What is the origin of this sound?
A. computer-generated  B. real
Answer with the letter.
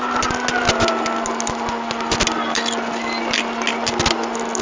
B